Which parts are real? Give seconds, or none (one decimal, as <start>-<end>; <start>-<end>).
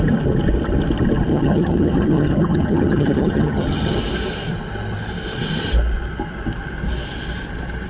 0.0-1.3; 4.0-7.9